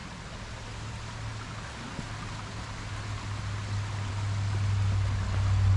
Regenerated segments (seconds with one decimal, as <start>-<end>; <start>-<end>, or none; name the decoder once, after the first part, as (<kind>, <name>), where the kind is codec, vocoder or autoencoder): none